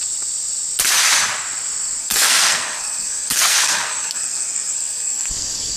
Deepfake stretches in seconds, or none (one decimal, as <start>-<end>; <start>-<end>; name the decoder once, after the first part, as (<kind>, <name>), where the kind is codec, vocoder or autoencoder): 2.0-5.8 (codec, SNAC)